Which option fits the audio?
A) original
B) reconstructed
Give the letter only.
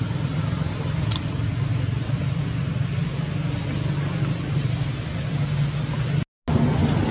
A